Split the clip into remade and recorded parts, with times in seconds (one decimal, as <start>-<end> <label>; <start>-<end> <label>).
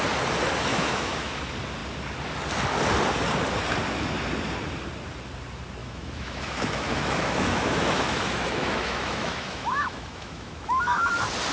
0.0-0.7 recorded; 0.7-1.4 remade; 1.4-5.8 recorded; 5.8-11.1 remade; 11.1-11.5 recorded